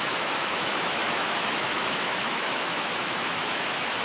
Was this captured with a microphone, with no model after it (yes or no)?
no